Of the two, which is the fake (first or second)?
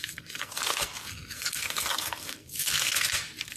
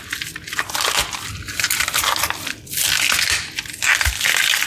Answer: first